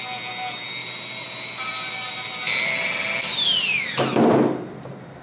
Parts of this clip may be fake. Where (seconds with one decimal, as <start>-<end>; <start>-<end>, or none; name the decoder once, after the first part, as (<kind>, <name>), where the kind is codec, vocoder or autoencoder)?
0.8-3.8 (vocoder, BigVGAN v2)